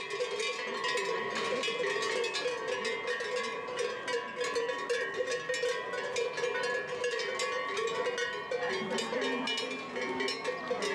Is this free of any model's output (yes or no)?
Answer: yes